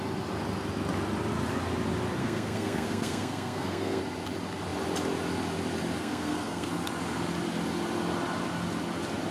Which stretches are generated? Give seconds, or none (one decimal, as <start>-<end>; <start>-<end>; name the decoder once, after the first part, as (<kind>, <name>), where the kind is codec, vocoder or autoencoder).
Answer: 2.2-4.0 (codec, SNAC); 6.0-6.7